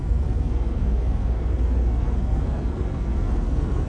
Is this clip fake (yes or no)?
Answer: yes